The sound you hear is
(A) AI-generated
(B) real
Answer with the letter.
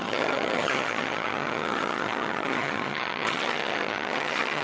A